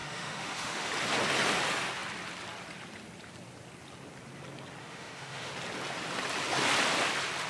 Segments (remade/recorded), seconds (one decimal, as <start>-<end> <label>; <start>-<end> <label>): 0.0-0.9 remade; 0.9-4.8 recorded; 4.8-5.5 remade; 5.5-7.5 recorded